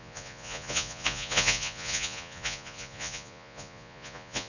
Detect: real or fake fake